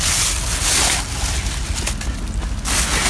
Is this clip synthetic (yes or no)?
no